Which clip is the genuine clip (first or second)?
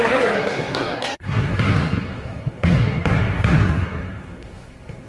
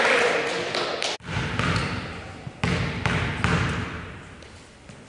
second